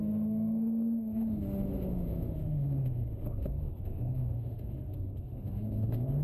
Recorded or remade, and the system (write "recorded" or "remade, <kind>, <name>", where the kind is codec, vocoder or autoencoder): remade, autoencoder, DAC-VAE